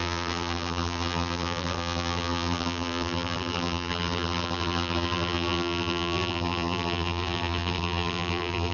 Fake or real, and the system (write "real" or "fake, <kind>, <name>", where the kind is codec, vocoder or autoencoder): fake, vocoder, BigVGAN v2